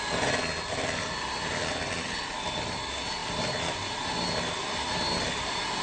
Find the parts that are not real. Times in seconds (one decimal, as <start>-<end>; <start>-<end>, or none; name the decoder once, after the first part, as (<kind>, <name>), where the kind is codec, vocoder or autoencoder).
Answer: none